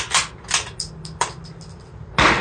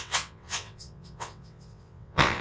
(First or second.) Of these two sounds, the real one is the first